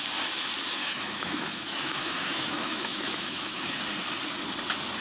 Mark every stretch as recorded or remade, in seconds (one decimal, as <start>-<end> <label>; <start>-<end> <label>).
0.0-0.8 recorded; 0.8-3.8 remade; 3.8-5.0 recorded